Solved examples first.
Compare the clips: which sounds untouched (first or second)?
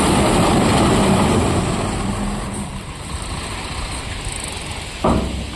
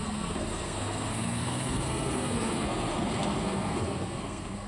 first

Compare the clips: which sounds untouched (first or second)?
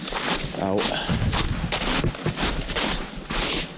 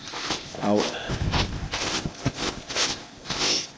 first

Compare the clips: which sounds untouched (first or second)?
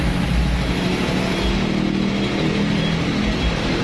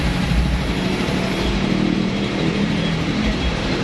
first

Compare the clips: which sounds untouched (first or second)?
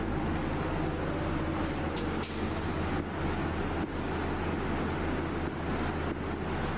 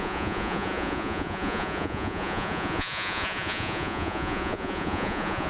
first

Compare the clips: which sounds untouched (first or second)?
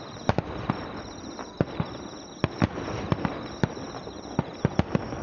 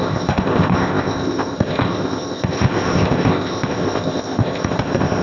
first